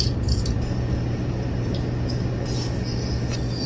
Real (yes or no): yes